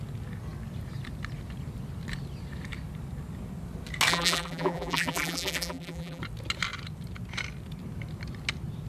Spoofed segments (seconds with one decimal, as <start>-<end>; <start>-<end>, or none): 4.1-6.2